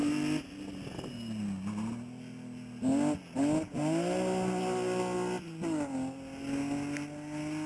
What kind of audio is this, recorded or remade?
recorded